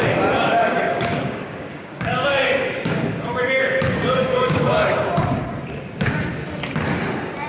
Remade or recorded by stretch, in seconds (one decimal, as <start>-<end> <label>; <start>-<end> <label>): 0.0-0.6 recorded; 0.6-5.1 remade; 5.1-7.5 recorded